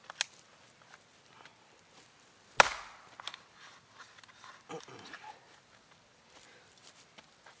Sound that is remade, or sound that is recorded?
recorded